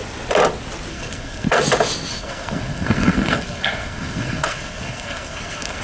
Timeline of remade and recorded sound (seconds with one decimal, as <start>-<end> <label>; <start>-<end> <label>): 0.0-0.9 recorded; 0.9-1.6 remade; 1.6-2.1 recorded; 2.1-5.8 remade